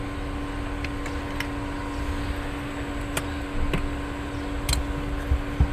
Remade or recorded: recorded